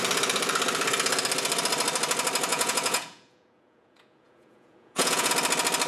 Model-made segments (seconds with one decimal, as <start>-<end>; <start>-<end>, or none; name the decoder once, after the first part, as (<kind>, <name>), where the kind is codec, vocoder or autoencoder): 2.5-5.3 (vocoder, Vocos)